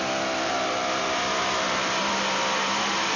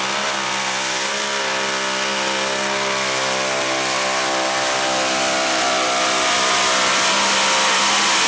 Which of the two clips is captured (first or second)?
second